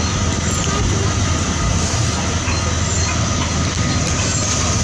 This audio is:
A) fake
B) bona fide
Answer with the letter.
B